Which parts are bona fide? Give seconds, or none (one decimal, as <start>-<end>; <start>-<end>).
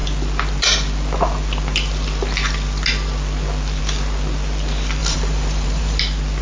0.0-5.0; 6.0-6.4